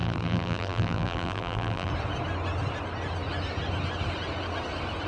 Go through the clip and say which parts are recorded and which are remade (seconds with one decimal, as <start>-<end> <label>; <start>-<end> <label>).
0.0-1.9 remade; 1.9-5.1 recorded